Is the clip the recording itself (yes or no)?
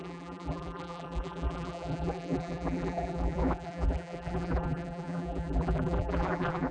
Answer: no